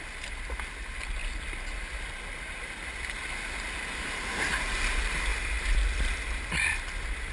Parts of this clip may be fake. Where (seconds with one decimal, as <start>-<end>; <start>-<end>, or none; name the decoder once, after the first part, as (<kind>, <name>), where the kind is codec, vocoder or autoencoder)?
none

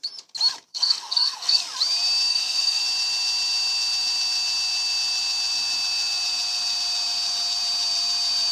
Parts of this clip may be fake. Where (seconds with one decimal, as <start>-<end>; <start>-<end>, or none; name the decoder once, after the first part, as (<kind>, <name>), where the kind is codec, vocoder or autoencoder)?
0.7-1.6 (codec, SNAC); 2.3-2.8

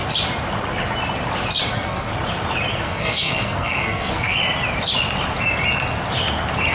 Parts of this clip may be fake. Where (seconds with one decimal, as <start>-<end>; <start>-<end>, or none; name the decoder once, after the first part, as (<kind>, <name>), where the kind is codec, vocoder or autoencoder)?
1.7-2.1 (codec, SNAC); 2.7-4.4